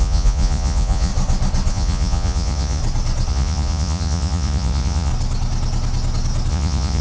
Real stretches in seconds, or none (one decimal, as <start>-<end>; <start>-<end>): 1.1-1.7; 2.8-3.3; 5.1-6.5